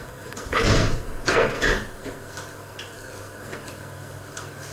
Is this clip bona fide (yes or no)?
no